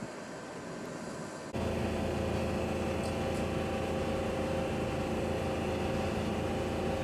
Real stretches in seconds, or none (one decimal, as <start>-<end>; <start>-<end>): 0.0-7.0